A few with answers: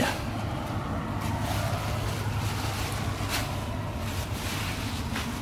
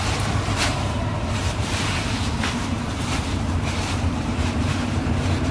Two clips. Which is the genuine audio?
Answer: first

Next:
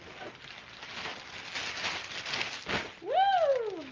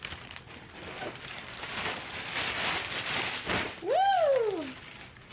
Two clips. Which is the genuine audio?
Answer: first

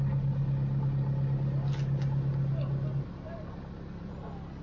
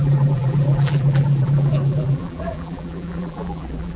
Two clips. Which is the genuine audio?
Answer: first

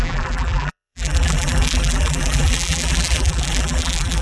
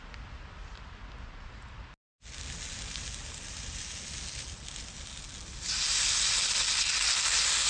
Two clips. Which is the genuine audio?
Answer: second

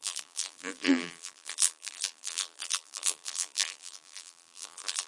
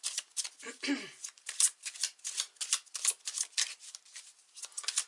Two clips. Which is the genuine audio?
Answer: second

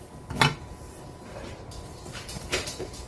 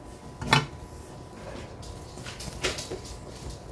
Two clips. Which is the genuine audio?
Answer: second